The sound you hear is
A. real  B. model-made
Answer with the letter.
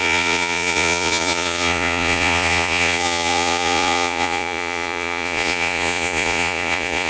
B